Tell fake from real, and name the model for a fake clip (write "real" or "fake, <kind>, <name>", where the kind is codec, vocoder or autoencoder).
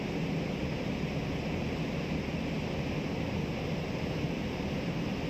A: real